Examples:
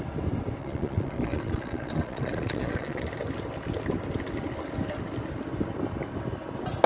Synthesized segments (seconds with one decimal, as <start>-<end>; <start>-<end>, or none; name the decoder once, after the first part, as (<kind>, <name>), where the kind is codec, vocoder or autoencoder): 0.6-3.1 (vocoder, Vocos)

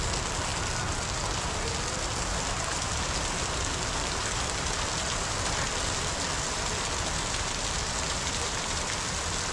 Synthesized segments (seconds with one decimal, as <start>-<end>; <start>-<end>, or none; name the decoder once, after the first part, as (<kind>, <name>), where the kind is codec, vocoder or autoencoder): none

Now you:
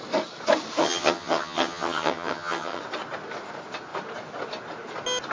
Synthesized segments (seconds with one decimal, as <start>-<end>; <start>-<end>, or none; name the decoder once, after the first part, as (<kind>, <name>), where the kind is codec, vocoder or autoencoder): 0.8-2.8 (vocoder, HiFi-GAN)

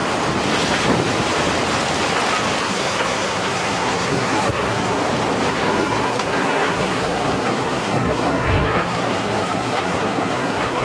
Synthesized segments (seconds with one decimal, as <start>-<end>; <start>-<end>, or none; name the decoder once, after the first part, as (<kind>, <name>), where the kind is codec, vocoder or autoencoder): 2.6-5.0 (codec, SNAC); 5.5-10.8

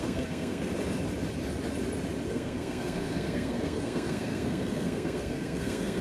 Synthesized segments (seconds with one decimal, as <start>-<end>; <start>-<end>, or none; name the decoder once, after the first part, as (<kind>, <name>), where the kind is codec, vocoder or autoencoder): 0.0-0.7 (codec, SNAC); 2.3-6.0

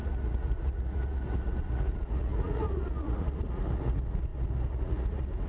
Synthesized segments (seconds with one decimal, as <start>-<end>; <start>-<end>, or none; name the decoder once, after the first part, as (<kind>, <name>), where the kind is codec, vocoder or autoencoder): 0.0-5.5 (vocoder, Vocos)